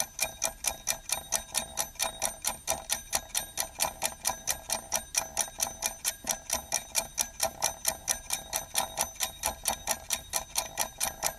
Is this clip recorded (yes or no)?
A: yes